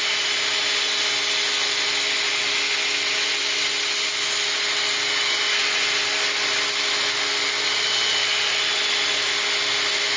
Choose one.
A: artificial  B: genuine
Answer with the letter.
B